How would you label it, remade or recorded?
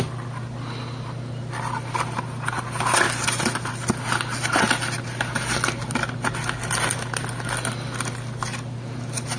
recorded